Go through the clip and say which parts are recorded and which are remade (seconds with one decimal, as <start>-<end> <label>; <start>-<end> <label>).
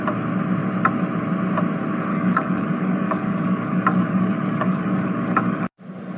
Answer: 0.0-2.1 recorded; 2.1-5.8 remade; 5.8-6.2 recorded